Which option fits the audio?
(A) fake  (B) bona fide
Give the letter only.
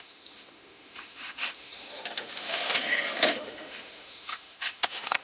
A